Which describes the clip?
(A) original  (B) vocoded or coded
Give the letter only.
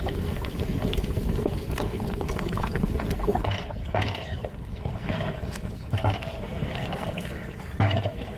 B